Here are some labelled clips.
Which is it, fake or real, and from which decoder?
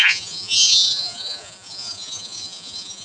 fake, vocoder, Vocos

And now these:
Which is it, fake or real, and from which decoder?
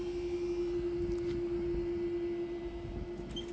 real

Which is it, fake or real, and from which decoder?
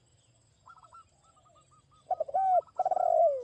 real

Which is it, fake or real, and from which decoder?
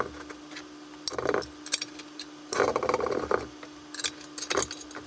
real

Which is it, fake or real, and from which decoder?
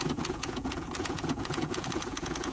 fake, vocoder, Vocos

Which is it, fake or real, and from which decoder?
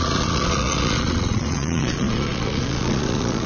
fake, vocoder, Vocos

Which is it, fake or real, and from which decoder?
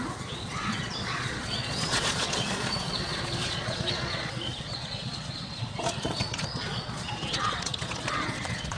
fake, vocoder, Vocos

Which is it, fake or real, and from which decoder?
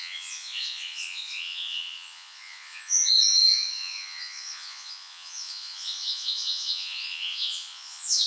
fake, vocoder, Vocos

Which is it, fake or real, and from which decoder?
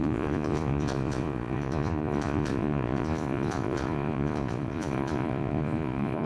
fake, vocoder, Vocos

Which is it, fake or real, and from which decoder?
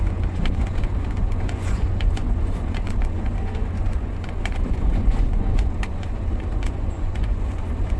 fake, vocoder, Vocos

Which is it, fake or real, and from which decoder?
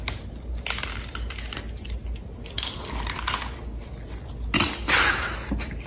real